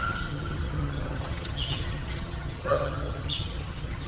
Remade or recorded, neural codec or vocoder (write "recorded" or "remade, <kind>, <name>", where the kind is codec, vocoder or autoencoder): remade, vocoder, HiFi-GAN